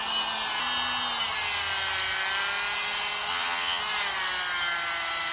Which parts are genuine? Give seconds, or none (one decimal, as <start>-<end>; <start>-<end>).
0.0-3.3; 3.8-5.3